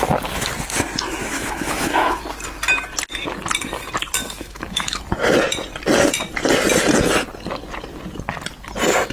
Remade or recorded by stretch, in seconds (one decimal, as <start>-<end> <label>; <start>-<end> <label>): 0.0-1.2 recorded; 1.2-2.2 remade; 2.2-4.2 recorded; 4.2-5.0 remade; 5.0-9.1 recorded